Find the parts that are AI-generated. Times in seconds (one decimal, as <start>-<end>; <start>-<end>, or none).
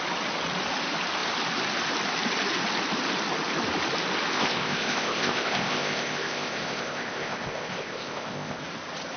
4.3-8.6